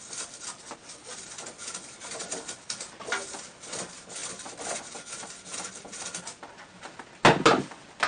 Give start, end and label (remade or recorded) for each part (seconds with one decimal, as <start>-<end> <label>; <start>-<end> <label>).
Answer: 0.0-8.1 recorded